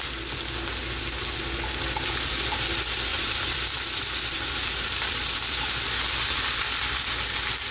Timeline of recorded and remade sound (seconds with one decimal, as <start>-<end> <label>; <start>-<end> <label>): 0.0-3.1 recorded; 3.1-7.1 remade; 7.1-7.7 recorded